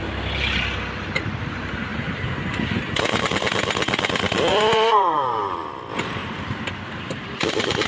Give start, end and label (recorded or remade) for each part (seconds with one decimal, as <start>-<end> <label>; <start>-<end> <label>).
0.0-4.5 recorded; 4.5-5.7 remade; 5.7-6.2 recorded; 6.2-7.9 remade